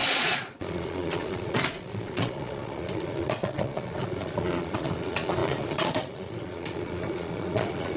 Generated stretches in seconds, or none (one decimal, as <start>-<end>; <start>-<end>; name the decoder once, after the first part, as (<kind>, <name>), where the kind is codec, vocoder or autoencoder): 0.0-8.0 (vocoder, Vocos)